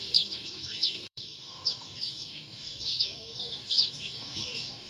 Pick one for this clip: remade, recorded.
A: remade